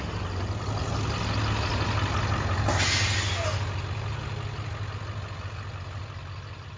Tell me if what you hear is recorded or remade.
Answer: recorded